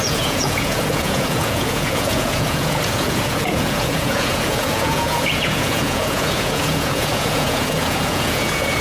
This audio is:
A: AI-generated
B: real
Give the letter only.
A